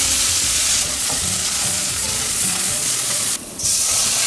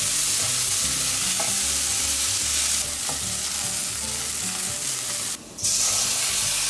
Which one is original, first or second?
second